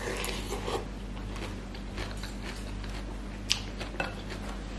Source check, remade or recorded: recorded